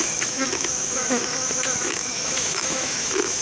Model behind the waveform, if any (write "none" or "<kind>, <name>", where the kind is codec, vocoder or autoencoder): autoencoder, DAC-VAE